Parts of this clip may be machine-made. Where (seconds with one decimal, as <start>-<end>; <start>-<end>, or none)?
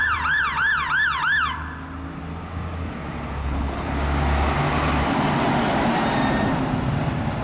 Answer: 3.4-3.9